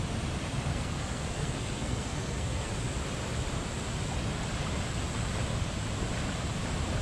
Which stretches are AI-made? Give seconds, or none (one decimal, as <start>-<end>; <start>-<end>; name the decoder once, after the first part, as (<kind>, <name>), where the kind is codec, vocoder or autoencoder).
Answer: 0.7-2.7 (codec, SNAC)